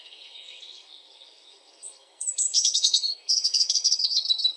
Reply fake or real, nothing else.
fake